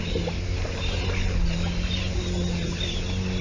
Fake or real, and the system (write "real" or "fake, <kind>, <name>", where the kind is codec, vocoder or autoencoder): real